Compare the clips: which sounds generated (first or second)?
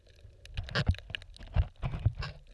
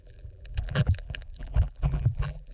second